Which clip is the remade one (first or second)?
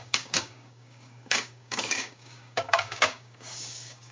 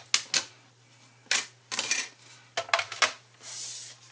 first